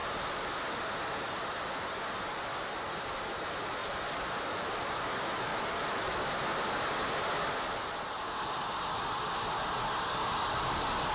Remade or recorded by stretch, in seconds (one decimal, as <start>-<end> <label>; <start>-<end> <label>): 0.0-0.8 remade; 0.8-3.8 recorded; 3.8-4.9 remade; 4.9-11.1 recorded